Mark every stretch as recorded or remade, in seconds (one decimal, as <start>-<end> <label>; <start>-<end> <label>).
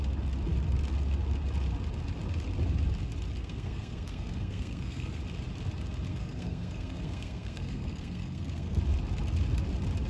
0.0-3.4 recorded; 3.4-5.2 remade; 5.2-6.1 recorded; 6.1-8.8 remade; 8.8-10.1 recorded